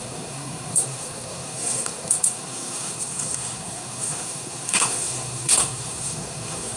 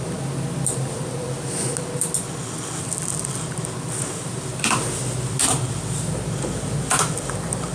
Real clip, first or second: second